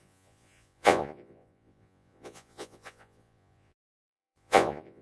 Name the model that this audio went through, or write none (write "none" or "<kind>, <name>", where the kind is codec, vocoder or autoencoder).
vocoder, Vocos